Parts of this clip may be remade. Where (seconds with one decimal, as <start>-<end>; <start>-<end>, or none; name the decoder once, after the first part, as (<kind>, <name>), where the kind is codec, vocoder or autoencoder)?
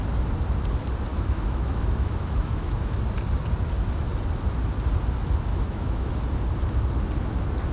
1.1-3.0 (autoencoder, DAC-VAE); 5.5-6.1